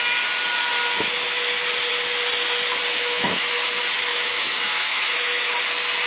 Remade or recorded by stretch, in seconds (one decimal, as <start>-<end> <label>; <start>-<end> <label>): 0.0-2.9 recorded; 2.9-3.5 remade; 3.5-4.1 recorded; 4.1-5.6 remade; 5.6-6.1 recorded